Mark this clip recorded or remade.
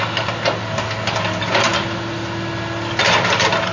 recorded